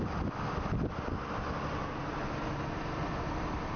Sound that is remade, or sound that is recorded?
recorded